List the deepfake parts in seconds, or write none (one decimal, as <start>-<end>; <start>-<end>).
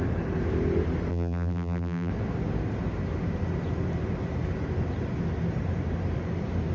1.1-2.1